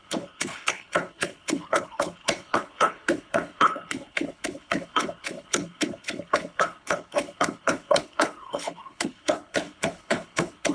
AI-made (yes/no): yes